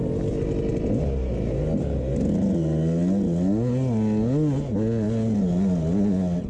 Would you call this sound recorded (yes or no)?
yes